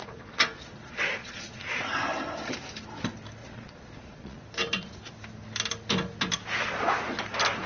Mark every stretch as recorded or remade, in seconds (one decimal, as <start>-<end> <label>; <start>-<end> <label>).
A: 0.0-1.8 remade; 1.8-3.4 recorded; 3.4-4.4 remade; 4.4-7.7 recorded